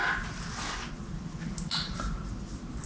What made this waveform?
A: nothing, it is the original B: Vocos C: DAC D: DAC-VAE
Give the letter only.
A